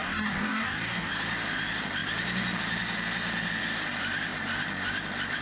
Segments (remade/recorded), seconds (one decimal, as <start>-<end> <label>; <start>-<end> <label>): 0.0-1.1 remade; 1.1-5.4 recorded